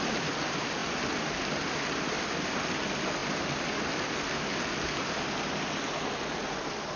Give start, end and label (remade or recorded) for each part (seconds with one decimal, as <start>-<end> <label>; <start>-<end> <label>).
0.0-7.0 recorded